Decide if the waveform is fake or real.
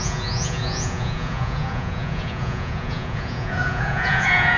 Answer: fake